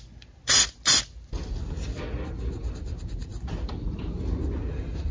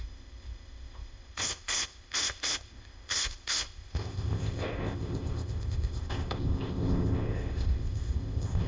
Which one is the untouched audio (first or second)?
first